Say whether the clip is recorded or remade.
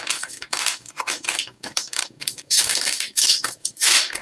remade